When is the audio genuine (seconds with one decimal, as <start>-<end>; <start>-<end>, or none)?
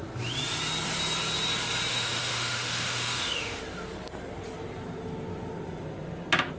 0.0-1.9; 3.6-6.6